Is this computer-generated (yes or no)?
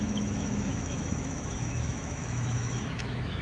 yes